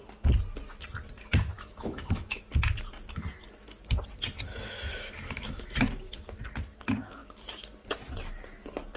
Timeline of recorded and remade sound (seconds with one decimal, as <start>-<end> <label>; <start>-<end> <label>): 0.0-1.5 recorded; 1.5-2.4 remade; 2.4-4.5 recorded; 4.5-5.8 remade; 5.8-9.0 recorded